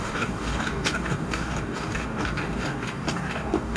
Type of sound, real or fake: fake